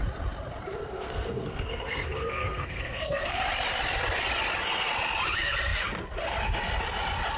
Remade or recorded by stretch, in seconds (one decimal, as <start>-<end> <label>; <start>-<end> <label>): 0.0-0.8 recorded; 0.8-3.4 remade; 3.4-7.4 recorded